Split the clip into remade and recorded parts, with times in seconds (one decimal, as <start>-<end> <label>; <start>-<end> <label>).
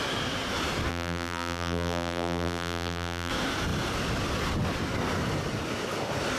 0.0-0.9 recorded; 0.9-3.3 remade; 3.3-6.4 recorded